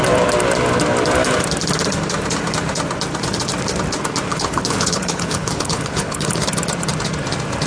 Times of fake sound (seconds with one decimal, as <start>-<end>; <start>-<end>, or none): 4.3-6.5